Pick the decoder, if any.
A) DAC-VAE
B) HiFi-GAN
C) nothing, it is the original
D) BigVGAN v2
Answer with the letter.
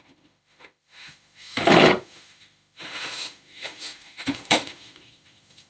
A